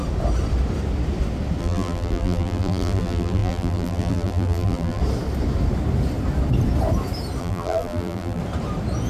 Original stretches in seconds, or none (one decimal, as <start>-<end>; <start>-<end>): 0.0-1.6; 5.0-7.4; 8.4-9.1